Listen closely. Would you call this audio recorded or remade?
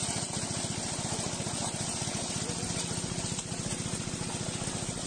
recorded